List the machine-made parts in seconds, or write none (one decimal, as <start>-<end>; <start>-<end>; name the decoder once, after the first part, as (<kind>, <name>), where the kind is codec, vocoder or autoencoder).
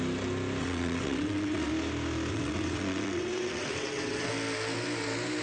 0.6-1.7 (vocoder, WaveNeXt); 2.3-4.3